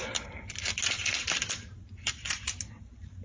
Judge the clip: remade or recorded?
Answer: recorded